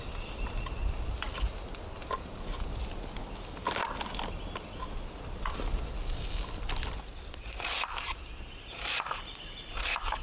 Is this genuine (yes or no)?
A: yes